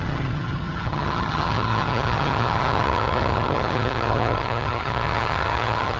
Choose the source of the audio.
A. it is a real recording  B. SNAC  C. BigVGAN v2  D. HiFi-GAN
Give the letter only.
D